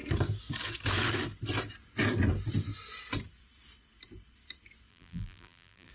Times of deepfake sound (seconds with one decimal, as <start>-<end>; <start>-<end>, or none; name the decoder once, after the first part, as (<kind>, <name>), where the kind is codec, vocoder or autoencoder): 4.9-5.9 (vocoder, BigVGAN v2)